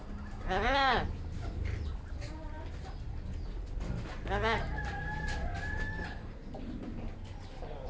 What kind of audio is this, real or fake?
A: real